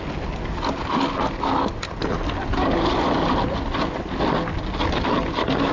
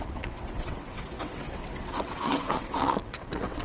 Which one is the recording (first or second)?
first